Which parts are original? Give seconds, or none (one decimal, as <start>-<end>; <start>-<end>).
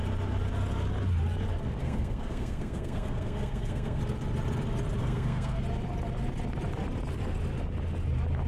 0.0-1.8; 4.0-5.0; 5.6-8.5